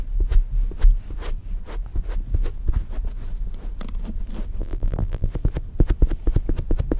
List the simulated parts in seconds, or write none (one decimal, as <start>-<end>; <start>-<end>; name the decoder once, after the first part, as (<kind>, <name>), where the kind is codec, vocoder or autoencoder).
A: 4.6-5.3 (vocoder, BigVGAN v2)